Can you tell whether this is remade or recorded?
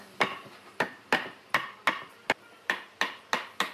recorded